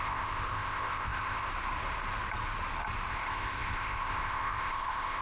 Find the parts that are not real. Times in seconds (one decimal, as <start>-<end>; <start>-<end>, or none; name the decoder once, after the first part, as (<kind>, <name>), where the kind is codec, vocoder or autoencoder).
0.0-1.5 (codec, ZipCodec); 3.1-5.2